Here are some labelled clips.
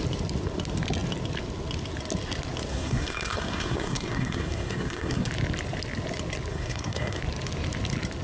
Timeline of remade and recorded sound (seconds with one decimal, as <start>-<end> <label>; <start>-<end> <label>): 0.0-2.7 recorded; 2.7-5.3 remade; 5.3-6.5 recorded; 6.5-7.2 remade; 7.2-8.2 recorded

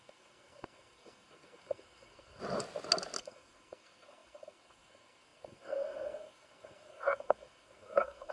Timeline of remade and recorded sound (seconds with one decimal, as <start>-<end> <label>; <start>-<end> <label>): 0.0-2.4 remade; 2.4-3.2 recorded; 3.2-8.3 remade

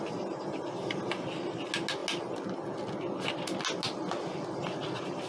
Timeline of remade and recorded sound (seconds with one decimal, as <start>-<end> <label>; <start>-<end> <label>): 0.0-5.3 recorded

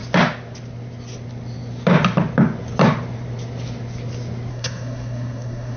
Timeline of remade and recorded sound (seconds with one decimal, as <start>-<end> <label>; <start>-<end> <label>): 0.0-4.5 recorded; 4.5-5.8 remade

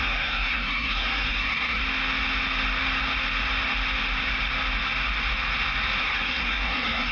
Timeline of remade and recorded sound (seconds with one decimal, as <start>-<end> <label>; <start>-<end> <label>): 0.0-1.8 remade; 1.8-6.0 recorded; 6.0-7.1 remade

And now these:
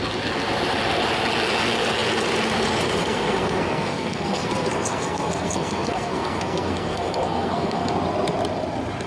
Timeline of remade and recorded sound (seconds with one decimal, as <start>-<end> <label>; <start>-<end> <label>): 0.0-3.0 recorded; 3.0-7.9 remade; 7.9-9.1 recorded